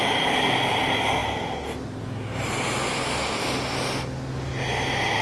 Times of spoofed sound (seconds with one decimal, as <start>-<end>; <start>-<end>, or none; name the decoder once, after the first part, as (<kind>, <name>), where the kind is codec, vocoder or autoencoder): none